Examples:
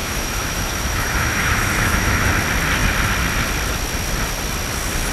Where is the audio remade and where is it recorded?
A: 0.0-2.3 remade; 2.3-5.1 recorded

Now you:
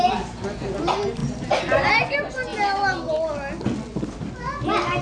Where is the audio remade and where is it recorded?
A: 0.0-5.0 recorded

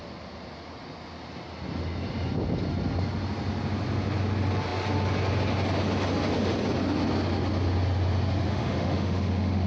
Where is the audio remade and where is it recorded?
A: 0.0-8.5 recorded; 8.5-9.7 remade